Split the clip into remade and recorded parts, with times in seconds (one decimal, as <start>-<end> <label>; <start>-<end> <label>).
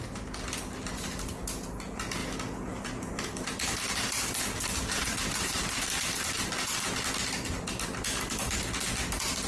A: 0.0-2.2 recorded; 2.2-4.4 remade; 4.4-4.9 recorded; 4.9-6.5 remade; 6.5-9.5 recorded